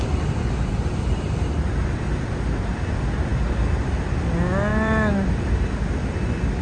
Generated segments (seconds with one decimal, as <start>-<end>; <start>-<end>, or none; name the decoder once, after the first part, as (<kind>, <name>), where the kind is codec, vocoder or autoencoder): 3.3-4.3 (vocoder, BigVGAN v2); 4.7-5.7